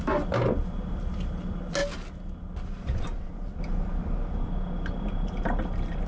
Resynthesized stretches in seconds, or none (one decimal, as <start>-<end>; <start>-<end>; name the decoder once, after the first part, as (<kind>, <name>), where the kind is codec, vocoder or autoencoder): none